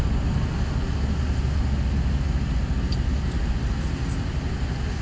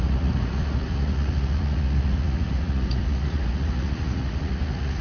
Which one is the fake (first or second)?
second